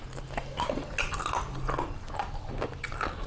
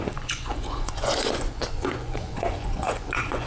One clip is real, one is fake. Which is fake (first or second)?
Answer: second